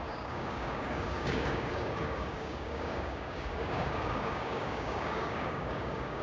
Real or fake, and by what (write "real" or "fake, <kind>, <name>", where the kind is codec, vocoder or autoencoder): fake, codec, DAC